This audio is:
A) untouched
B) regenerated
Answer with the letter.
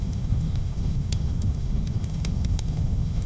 B